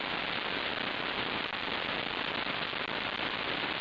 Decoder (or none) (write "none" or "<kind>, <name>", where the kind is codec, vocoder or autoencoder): none